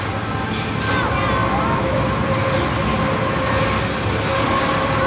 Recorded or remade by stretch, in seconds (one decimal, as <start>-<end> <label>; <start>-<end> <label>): 0.0-5.1 recorded